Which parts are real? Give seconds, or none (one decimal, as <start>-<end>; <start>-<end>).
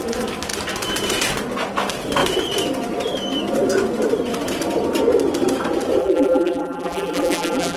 0.0-6.0